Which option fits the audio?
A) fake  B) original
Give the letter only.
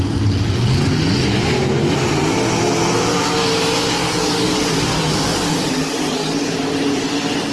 B